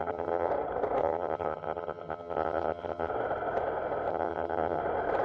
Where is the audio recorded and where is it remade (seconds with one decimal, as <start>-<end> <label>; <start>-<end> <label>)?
0.0-0.5 remade; 0.5-1.0 recorded; 1.0-3.1 remade; 3.1-4.1 recorded; 4.1-4.8 remade; 4.8-5.2 recorded